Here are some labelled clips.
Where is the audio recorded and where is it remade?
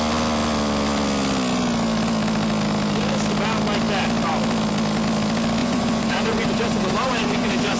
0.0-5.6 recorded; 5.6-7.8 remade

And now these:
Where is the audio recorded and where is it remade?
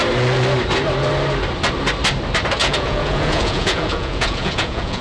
0.0-2.6 recorded; 2.6-5.0 remade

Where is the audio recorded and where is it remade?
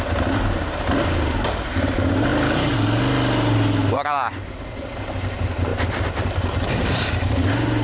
0.0-2.3 remade; 2.3-4.7 recorded; 4.7-7.8 remade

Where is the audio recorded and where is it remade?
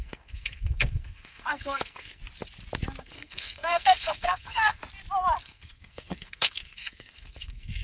0.0-2.2 remade; 2.2-3.0 recorded; 3.0-4.8 remade; 4.8-5.4 recorded; 5.4-7.8 remade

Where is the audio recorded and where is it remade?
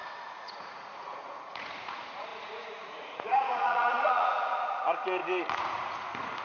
0.0-6.4 remade